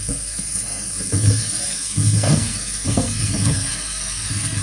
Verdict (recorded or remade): remade